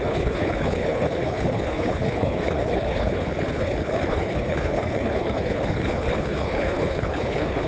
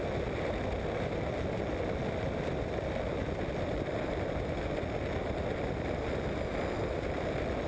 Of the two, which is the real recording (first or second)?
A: second